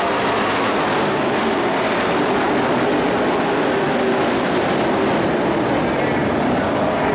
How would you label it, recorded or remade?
recorded